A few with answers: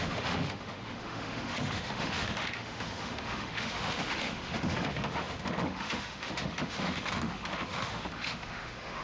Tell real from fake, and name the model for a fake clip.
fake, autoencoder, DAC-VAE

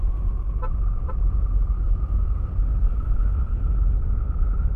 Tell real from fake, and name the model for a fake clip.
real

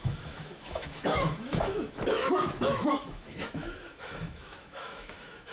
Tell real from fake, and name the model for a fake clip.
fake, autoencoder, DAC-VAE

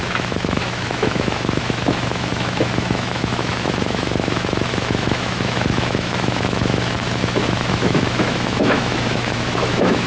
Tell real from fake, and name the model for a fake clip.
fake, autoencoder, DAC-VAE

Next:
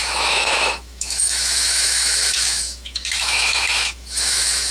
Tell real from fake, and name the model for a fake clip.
fake, autoencoder, DAC-VAE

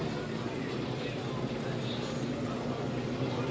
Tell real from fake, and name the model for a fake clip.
real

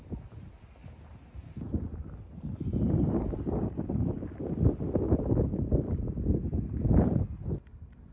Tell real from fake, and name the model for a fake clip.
real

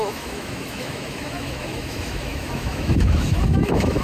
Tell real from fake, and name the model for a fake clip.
fake, autoencoder, DAC-VAE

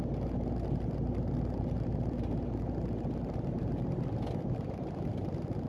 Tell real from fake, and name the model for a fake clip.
real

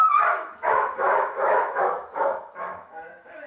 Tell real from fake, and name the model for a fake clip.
fake, autoencoder, DAC-VAE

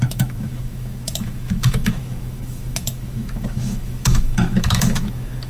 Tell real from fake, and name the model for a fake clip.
fake, autoencoder, DAC-VAE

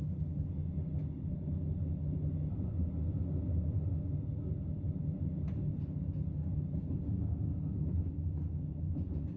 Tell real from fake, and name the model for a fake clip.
real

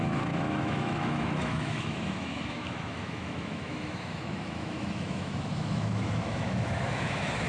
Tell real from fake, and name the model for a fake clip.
fake, autoencoder, DAC-VAE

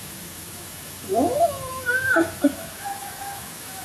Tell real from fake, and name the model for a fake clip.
fake, autoencoder, DAC-VAE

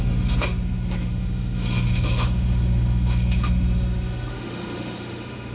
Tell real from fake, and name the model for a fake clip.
fake, autoencoder, DAC-VAE